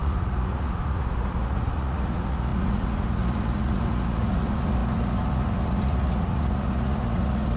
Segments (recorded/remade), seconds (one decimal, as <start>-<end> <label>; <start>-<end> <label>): 0.0-7.6 remade